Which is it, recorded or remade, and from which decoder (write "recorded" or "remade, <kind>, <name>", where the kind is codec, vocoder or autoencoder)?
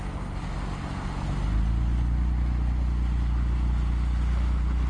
recorded